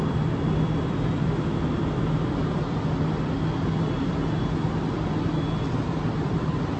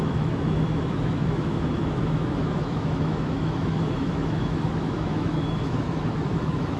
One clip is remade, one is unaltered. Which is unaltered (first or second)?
first